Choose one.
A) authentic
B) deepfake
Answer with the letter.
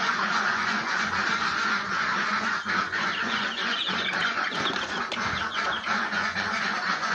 B